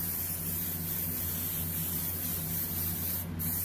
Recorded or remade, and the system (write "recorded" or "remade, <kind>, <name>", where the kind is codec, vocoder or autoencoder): recorded